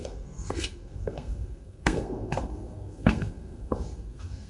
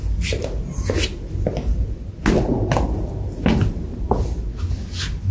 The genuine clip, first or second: second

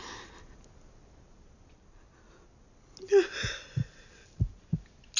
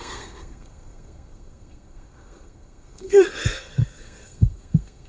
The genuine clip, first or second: first